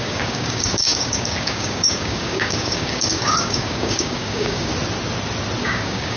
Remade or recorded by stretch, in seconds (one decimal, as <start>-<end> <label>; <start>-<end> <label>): 0.0-4.7 remade; 4.7-5.6 recorded; 5.6-6.2 remade